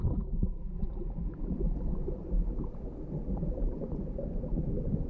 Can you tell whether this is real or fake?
real